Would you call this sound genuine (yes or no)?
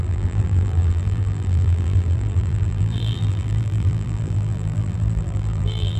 no